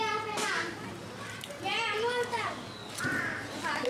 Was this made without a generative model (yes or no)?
yes